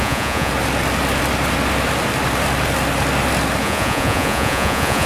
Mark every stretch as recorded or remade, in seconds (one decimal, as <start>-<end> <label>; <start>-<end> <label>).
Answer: 0.0-0.5 remade; 0.5-3.6 recorded; 3.6-5.1 remade